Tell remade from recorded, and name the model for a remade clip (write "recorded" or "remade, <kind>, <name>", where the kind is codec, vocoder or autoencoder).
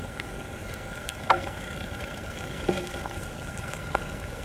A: remade, codec, SNAC